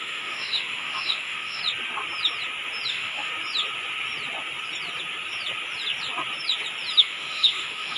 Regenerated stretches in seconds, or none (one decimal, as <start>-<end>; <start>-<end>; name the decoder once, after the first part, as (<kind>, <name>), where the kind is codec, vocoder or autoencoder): 0.0-1.6 (autoencoder, DAC-VAE); 2.9-3.3; 7.0-8.0